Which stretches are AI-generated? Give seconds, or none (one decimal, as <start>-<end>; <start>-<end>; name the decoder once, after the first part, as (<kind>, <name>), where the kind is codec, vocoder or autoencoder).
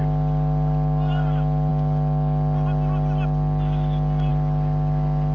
none